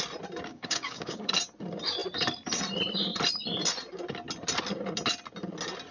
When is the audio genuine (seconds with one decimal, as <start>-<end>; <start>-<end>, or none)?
0.0-0.5; 1.3-5.9